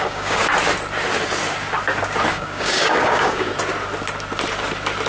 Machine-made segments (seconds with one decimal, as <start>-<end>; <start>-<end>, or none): 0.0-0.4; 2.3-3.5